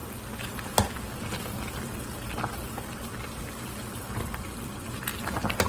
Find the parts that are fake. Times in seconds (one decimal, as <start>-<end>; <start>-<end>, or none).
1.4-5.1